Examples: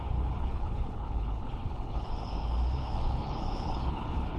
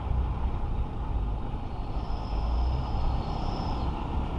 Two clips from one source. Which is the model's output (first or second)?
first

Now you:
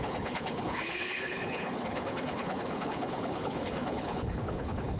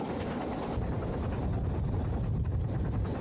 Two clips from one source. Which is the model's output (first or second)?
first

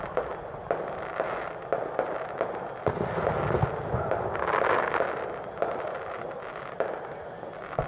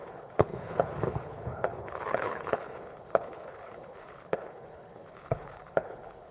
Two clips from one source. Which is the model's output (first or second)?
second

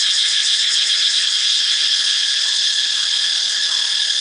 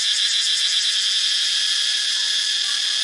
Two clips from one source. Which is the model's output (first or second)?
first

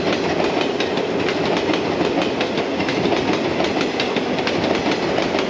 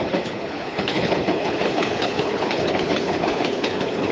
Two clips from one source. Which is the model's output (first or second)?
second